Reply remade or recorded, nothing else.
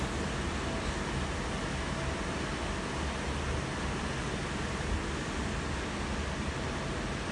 recorded